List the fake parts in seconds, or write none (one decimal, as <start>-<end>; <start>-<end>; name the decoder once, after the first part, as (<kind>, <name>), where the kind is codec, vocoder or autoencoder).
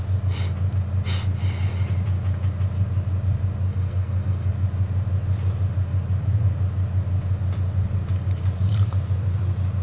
3.7-4.5 (codec, SNAC)